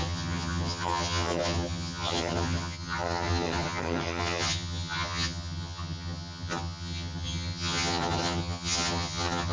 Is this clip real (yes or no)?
no